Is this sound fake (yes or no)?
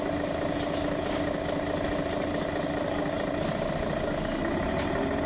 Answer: no